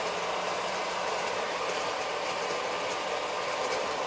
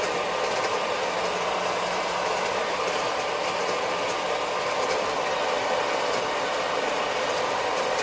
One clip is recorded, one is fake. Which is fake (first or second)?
first